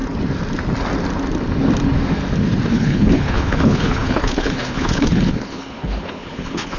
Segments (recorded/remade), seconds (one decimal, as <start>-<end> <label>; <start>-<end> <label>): 0.0-2.7 recorded; 2.7-6.8 remade